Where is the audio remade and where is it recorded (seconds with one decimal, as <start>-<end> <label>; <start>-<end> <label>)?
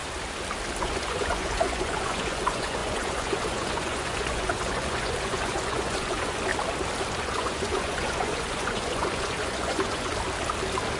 0.0-0.8 recorded; 0.8-6.5 remade; 6.5-7.2 recorded; 7.2-10.1 remade; 10.1-11.0 recorded